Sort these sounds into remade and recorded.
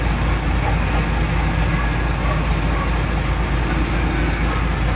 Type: recorded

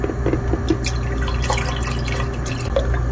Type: recorded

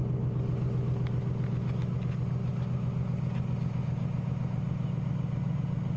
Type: recorded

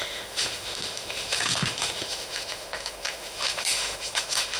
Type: remade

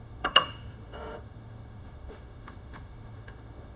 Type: remade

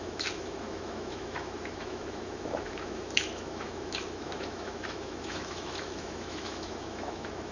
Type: remade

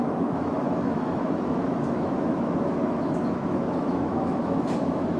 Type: remade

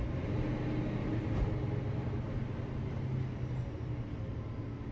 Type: recorded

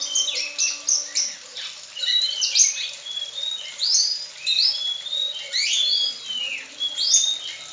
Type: recorded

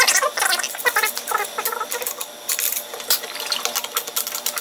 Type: recorded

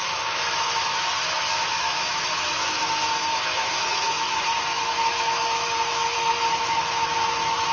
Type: remade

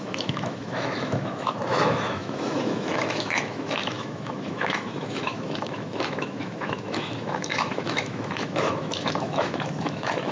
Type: remade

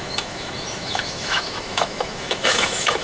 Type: remade